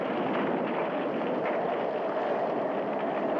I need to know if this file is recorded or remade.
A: recorded